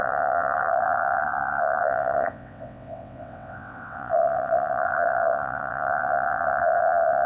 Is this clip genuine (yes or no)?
no